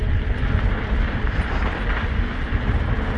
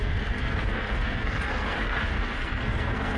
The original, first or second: first